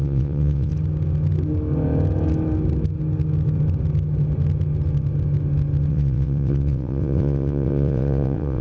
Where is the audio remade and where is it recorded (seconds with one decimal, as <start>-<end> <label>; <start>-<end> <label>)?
0.0-0.7 remade; 0.7-5.9 recorded; 5.9-8.6 remade